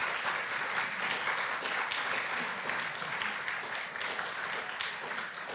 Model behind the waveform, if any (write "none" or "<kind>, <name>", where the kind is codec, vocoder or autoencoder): none